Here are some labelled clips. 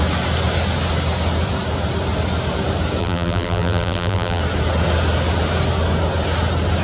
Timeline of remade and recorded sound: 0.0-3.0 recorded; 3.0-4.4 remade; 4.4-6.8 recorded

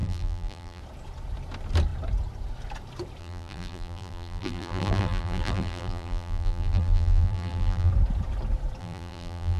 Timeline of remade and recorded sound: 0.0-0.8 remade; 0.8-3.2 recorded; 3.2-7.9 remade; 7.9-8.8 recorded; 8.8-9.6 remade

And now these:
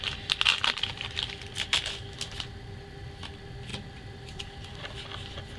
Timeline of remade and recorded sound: 0.0-0.5 recorded; 0.5-1.5 remade; 1.5-3.7 recorded; 3.7-4.9 remade; 4.9-5.6 recorded